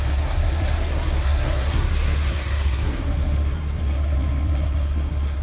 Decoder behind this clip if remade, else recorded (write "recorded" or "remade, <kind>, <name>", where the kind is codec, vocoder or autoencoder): remade, codec, SNAC